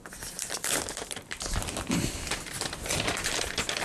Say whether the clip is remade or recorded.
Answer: remade